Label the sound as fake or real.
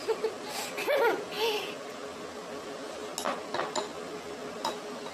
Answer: real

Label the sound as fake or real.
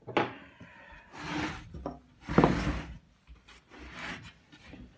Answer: real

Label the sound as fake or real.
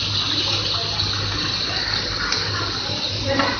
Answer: real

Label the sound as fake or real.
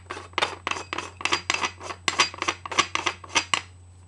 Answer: real